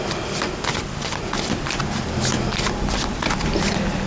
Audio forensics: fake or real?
real